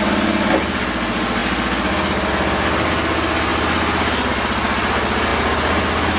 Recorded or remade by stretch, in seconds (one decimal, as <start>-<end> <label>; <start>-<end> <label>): 0.0-6.2 recorded